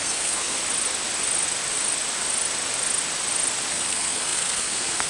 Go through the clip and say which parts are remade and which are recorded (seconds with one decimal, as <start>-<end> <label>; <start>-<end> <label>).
0.0-0.6 remade; 0.6-3.7 recorded; 3.7-5.1 remade